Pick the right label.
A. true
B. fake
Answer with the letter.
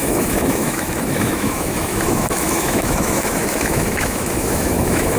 B